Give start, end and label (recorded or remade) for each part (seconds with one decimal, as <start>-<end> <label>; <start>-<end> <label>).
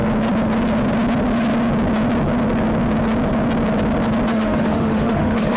0.0-4.3 recorded; 4.3-5.6 remade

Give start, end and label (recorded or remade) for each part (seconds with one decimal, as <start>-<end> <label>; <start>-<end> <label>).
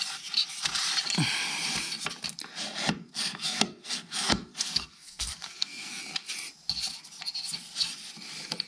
0.0-3.0 recorded; 3.0-6.0 remade; 6.0-8.7 recorded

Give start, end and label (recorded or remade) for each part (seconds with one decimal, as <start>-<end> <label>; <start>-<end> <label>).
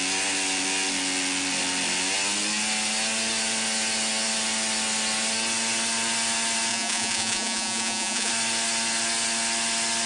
0.0-6.7 recorded; 6.7-8.3 remade; 8.3-10.1 recorded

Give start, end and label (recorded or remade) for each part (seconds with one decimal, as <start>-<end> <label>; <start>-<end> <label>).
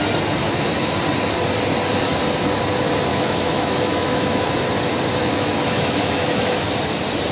0.0-0.4 recorded; 0.4-0.9 remade; 0.9-3.1 recorded; 3.1-4.5 remade; 4.5-5.2 recorded; 5.2-6.7 remade; 6.7-7.3 recorded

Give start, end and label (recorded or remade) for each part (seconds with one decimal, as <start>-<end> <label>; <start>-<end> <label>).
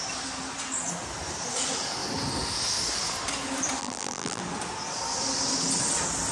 0.0-3.8 recorded; 3.8-4.4 remade; 4.4-6.3 recorded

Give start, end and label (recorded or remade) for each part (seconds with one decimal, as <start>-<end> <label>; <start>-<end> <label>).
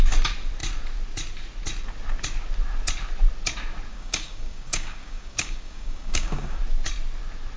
0.0-3.9 recorded; 3.9-6.6 remade; 6.6-7.6 recorded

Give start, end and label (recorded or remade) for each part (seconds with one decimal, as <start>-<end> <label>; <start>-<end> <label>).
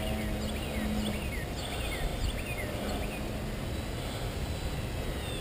0.0-5.4 recorded